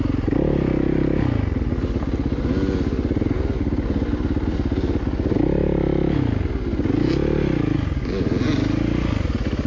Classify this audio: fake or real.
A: real